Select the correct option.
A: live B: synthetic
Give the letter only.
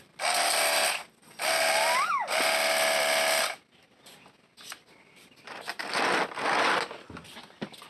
A